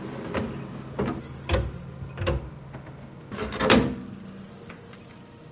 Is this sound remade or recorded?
recorded